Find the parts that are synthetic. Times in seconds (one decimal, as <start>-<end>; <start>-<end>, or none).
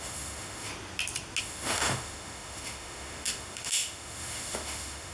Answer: 0.0-0.7; 1.4-5.1